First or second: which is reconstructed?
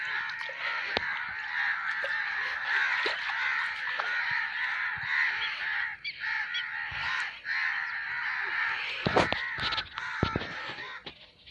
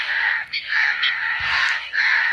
second